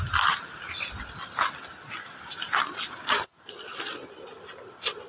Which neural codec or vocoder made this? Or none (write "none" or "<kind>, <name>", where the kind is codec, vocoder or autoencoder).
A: none